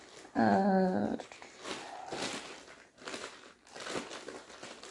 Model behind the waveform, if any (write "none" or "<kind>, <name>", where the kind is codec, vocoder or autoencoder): none